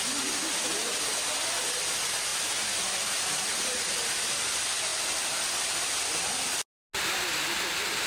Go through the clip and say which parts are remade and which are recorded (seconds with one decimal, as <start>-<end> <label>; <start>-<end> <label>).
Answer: 0.0-2.3 recorded; 2.3-4.3 remade; 4.3-4.9 recorded; 4.9-6.1 remade; 6.1-8.1 recorded